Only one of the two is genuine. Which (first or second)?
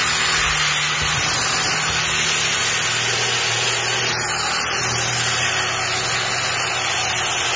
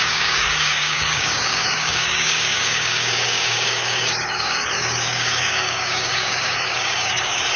first